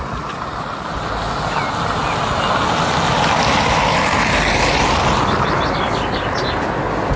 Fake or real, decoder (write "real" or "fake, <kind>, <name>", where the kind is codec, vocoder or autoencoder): real